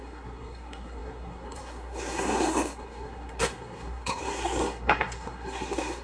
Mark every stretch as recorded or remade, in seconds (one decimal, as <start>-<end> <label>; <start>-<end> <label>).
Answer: 0.0-6.0 remade